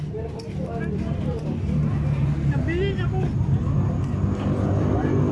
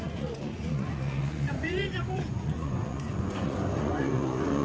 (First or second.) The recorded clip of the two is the first